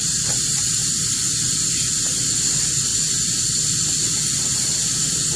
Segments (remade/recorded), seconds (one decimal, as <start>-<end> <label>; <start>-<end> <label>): 0.0-5.4 recorded